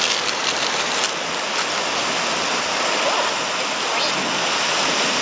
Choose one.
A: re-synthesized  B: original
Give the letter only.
B